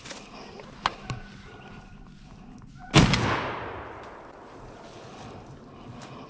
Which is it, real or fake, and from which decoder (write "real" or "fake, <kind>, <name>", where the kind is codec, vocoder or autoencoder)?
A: real